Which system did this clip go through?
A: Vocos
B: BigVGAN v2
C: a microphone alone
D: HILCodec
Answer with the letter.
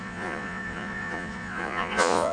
A